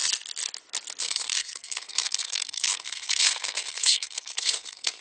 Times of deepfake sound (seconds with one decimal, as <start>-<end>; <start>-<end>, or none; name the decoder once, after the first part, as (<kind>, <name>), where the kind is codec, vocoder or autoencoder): 1.0-5.0 (codec, SNAC)